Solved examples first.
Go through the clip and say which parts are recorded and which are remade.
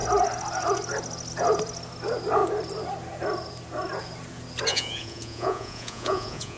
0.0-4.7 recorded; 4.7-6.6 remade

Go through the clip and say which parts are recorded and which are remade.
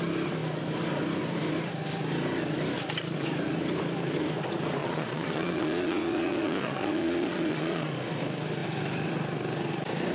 0.0-4.8 recorded; 4.8-7.9 remade; 7.9-10.1 recorded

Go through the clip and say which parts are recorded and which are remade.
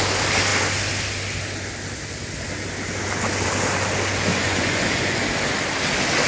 0.0-4.3 recorded; 4.3-5.2 remade; 5.2-6.3 recorded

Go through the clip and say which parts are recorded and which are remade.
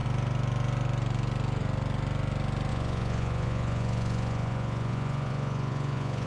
0.0-2.7 recorded; 2.7-6.3 remade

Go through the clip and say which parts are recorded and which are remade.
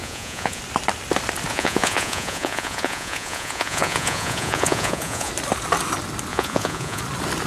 0.0-0.6 remade; 0.6-1.5 recorded; 1.5-5.3 remade; 5.3-6.3 recorded; 6.3-7.0 remade; 7.0-7.5 recorded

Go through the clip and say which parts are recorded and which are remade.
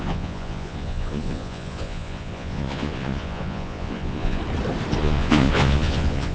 0.0-4.4 remade; 4.4-5.0 recorded; 5.0-6.3 remade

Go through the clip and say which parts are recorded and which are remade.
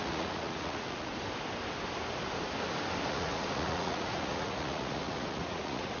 0.0-1.1 remade; 1.1-3.1 recorded; 3.1-6.0 remade